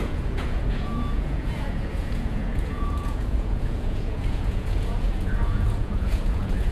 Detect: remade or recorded remade